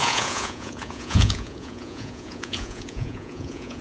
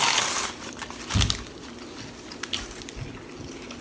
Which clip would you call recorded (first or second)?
second